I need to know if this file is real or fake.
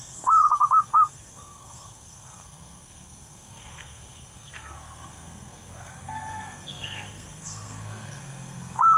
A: fake